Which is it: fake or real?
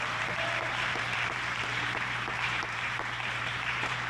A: fake